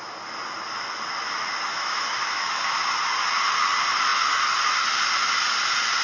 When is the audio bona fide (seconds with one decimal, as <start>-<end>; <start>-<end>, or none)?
0.0-1.7; 2.8-6.0